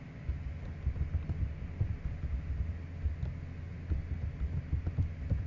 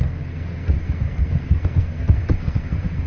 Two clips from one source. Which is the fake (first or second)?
second